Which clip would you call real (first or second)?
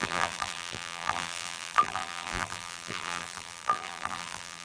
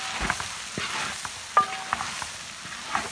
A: second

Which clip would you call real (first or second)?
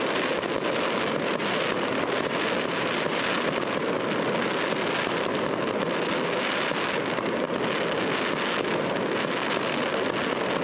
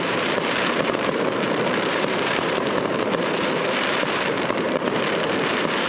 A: first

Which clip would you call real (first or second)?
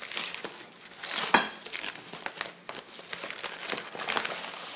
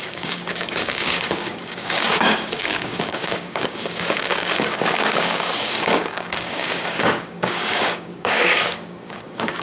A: first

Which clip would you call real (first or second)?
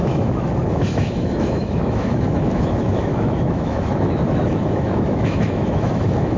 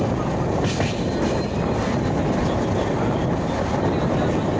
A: second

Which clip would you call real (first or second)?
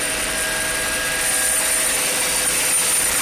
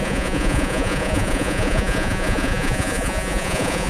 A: first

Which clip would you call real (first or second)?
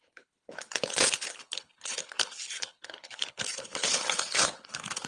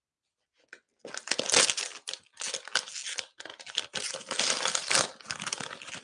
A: second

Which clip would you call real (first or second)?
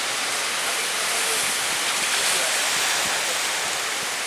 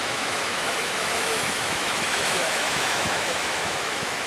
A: first